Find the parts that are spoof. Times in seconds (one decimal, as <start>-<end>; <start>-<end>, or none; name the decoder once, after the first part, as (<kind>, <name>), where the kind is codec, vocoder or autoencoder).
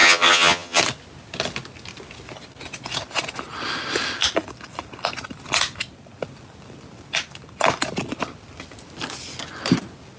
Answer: 0.0-0.8 (vocoder, HiFi-GAN)